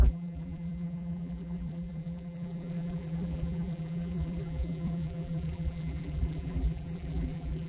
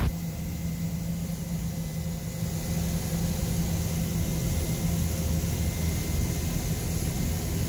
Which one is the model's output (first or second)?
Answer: first